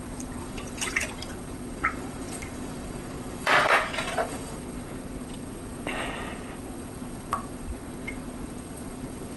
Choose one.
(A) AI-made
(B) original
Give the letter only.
A